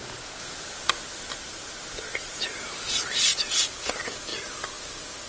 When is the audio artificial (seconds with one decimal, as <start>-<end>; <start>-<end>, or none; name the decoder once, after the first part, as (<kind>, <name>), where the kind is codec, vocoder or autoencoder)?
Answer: 0.0-0.8 (vocoder, Vocos); 2.1-2.7; 3.3-3.9